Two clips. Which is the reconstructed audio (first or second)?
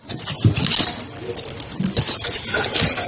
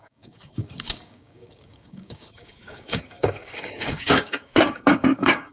second